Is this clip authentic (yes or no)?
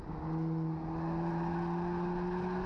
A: yes